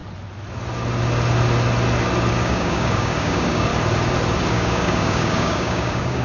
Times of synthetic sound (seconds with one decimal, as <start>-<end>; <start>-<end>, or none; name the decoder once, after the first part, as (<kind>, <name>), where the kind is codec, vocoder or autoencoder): 2.3-3.7 (codec, DAC); 4.5-6.2